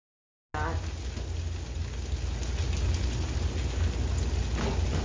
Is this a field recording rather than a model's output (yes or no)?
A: yes